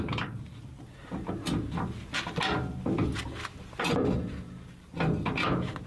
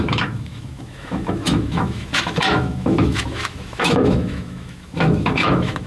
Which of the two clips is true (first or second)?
first